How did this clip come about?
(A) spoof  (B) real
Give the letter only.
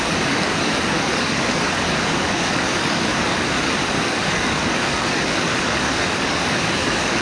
A